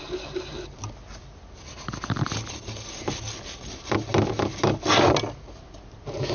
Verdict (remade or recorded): recorded